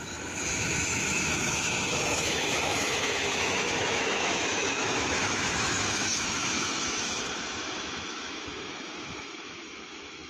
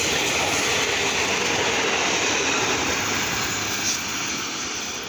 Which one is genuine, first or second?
second